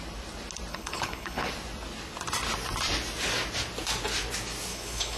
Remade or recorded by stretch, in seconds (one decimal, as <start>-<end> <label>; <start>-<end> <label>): 0.0-0.7 recorded; 0.7-1.5 remade; 1.5-4.7 recorded; 4.7-5.2 remade